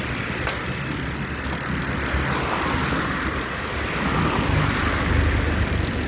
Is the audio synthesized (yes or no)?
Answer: no